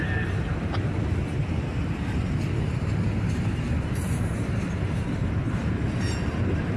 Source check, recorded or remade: remade